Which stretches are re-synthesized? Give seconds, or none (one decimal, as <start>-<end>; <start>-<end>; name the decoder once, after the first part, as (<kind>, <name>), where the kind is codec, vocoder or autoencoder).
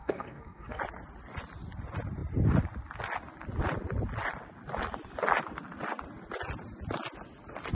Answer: 0.0-0.8 (codec, SNAC)